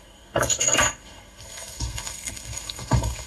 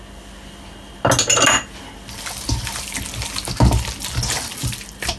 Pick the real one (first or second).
second